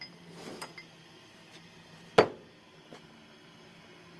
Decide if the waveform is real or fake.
real